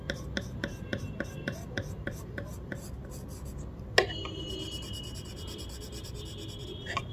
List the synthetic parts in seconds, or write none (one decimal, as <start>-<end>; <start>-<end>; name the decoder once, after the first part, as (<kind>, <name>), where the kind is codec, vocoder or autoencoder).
0.9-2.7 (vocoder, BigVGAN v2)